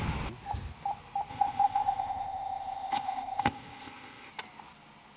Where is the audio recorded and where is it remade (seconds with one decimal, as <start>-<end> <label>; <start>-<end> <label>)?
0.0-1.3 recorded; 1.3-4.3 remade; 4.3-5.2 recorded